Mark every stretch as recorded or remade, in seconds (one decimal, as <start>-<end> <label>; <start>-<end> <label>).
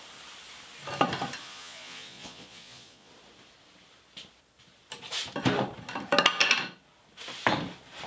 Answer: 0.0-1.4 recorded; 1.4-3.1 remade; 3.1-8.1 recorded